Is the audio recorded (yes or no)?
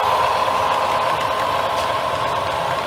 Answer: yes